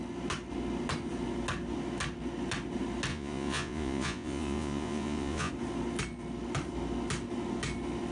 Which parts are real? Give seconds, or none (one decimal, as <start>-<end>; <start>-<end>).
0.0-3.1; 5.5-8.1